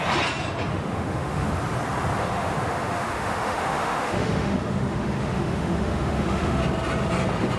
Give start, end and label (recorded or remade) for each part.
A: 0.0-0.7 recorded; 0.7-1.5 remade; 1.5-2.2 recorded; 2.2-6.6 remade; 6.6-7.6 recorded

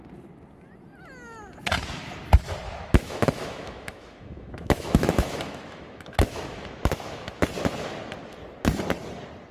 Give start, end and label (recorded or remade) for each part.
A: 0.0-2.8 recorded; 2.8-7.4 remade; 7.4-9.5 recorded

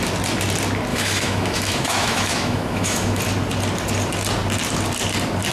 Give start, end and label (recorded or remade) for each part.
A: 0.0-0.9 recorded; 0.9-3.2 remade; 3.2-5.5 recorded

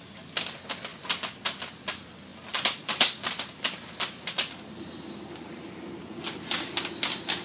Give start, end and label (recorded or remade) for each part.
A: 0.0-7.4 recorded

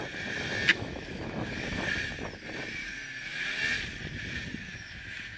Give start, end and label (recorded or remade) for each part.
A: 0.0-0.7 recorded; 0.7-1.8 remade; 1.8-4.7 recorded; 4.7-5.4 remade